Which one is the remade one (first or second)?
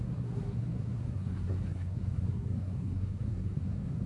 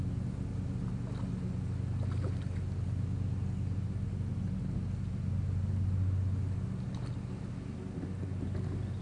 first